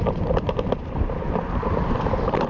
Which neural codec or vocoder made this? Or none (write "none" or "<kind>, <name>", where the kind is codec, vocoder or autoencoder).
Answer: vocoder, BigVGAN v2